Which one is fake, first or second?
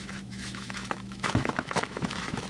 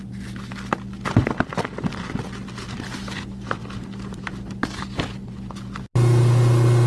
first